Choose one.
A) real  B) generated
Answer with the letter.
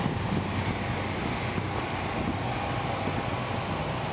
A